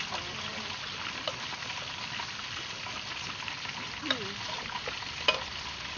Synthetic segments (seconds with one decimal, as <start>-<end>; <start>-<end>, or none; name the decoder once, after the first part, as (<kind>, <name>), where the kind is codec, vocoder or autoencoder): none